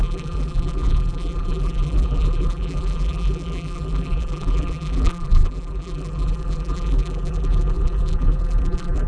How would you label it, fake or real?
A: fake